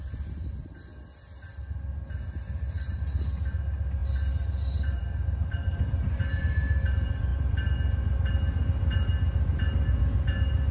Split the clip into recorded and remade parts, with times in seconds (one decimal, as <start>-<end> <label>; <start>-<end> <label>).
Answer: 0.0-10.7 recorded

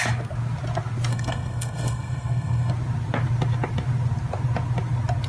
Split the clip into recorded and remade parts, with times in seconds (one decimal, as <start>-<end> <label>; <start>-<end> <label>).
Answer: 0.0-1.1 recorded; 1.1-2.7 remade; 2.7-5.3 recorded

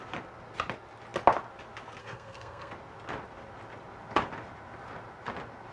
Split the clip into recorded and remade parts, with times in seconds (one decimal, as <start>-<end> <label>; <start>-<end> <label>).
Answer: 0.0-2.0 recorded; 2.0-2.7 remade; 2.7-5.7 recorded

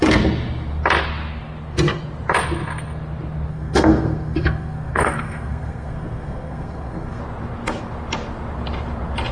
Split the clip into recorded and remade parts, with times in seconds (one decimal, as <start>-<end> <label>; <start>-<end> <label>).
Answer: 0.0-3.5 recorded; 3.5-7.2 remade; 7.2-9.3 recorded

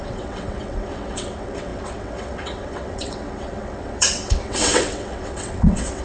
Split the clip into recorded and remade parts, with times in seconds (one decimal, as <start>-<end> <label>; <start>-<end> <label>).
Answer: 0.0-6.0 remade

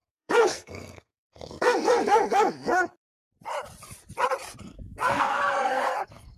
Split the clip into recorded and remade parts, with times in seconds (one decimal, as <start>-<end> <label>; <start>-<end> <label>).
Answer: 0.0-3.1 remade; 3.1-4.6 recorded; 4.6-6.4 remade

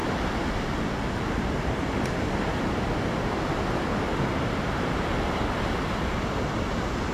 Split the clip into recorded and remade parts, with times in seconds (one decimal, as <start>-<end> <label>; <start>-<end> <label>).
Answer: 0.0-7.1 recorded

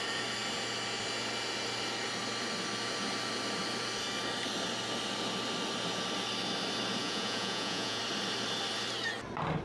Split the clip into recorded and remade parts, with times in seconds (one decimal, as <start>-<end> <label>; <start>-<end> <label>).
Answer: 0.0-7.0 recorded; 7.0-8.0 remade; 8.0-9.6 recorded